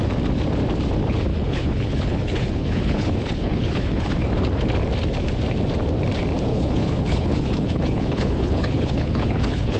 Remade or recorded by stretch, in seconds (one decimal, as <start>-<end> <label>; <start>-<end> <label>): 0.0-1.3 recorded; 1.3-4.1 remade; 4.1-6.5 recorded; 6.5-9.8 remade